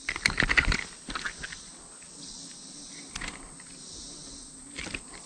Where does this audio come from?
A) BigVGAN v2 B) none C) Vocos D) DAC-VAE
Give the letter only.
B